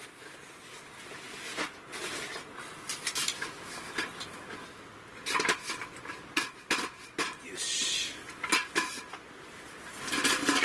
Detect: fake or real real